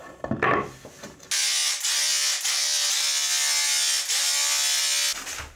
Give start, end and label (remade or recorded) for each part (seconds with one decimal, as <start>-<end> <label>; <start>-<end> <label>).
0.0-5.6 recorded